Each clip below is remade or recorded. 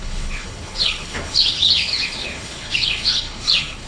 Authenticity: remade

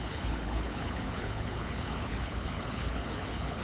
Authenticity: remade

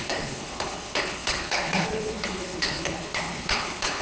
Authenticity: remade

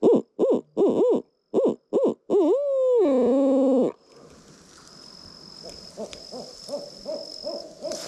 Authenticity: recorded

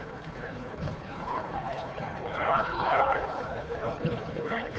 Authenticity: remade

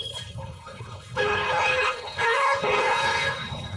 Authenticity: remade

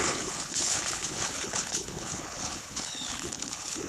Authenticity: remade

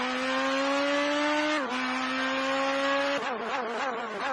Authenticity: recorded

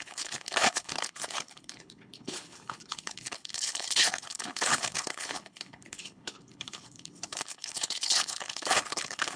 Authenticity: remade